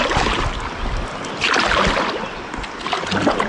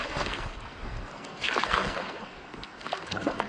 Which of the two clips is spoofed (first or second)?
second